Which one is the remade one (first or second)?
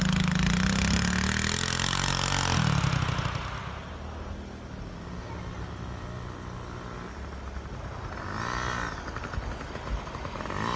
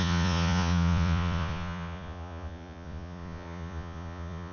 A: second